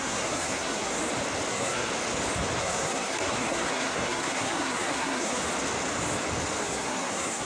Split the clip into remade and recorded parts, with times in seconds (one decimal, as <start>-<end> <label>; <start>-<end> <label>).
0.0-0.9 remade; 0.9-1.5 recorded; 1.5-1.9 remade; 1.9-2.6 recorded; 2.6-5.4 remade; 5.4-6.6 recorded; 6.6-7.4 remade